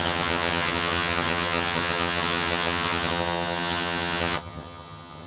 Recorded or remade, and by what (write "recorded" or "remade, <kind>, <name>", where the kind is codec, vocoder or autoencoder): remade, vocoder, HiFi-GAN